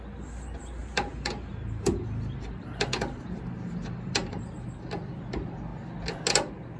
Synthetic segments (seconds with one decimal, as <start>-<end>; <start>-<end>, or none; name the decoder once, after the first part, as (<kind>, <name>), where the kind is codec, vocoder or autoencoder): 0.8-4.5 (vocoder, BigVGAN v2)